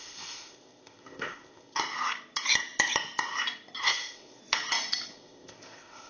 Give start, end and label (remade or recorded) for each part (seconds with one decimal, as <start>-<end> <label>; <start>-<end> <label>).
0.0-1.8 remade; 1.8-3.8 recorded; 3.8-4.4 remade; 4.4-5.1 recorded; 5.1-6.1 remade